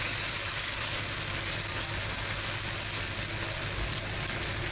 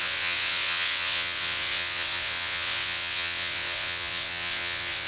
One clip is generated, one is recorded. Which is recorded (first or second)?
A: first